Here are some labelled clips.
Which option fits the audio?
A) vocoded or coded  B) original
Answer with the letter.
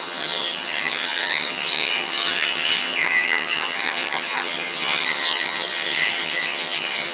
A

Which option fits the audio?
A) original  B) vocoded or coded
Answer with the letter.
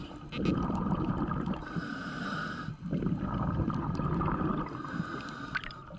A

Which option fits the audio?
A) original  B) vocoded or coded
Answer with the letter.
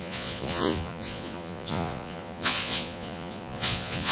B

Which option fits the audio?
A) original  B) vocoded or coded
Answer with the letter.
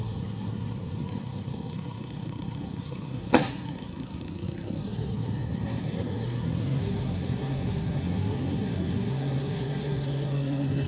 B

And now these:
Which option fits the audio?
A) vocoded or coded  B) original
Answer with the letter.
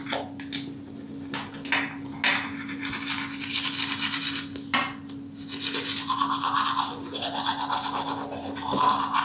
B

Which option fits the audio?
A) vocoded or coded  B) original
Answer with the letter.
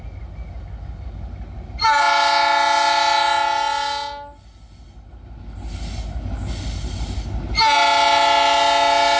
B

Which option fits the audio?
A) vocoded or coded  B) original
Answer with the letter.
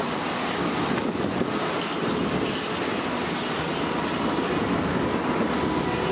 B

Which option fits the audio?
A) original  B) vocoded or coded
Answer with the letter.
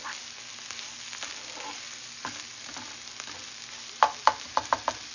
A